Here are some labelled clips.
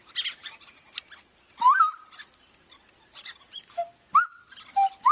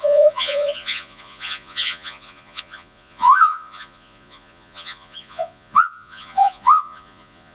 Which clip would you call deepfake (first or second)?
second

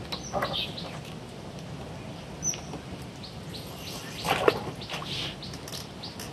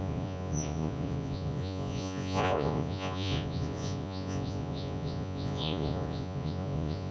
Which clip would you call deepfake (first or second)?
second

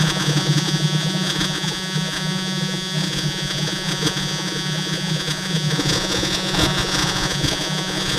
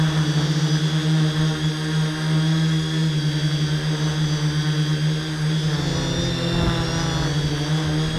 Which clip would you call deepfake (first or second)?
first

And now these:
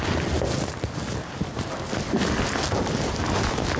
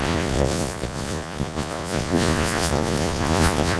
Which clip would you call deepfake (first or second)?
second